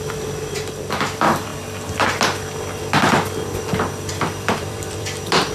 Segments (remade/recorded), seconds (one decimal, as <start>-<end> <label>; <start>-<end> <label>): 0.0-1.5 remade; 1.5-4.1 recorded; 4.1-5.5 remade